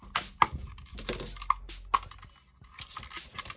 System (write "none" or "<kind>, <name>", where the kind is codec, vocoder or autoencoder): none